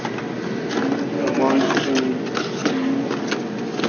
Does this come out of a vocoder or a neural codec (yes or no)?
no